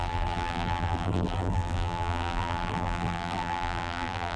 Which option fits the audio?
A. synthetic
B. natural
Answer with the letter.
A